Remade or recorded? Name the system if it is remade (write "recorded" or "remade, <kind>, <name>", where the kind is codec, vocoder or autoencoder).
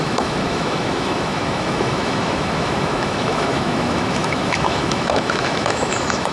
remade, autoencoder, DAC-VAE